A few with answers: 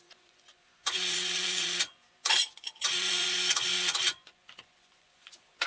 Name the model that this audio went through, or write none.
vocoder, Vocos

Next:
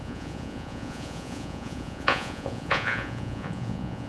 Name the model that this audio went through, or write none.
vocoder, Vocos